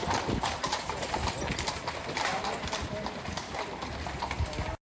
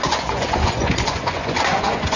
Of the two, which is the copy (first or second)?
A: second